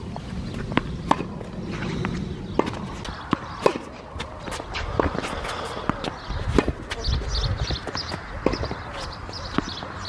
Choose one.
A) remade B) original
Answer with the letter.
B